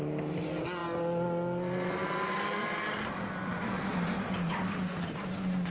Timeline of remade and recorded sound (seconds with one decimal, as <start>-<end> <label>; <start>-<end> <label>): 0.0-5.7 recorded